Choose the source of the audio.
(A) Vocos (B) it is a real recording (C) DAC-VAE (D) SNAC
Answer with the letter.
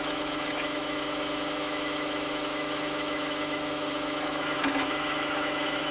C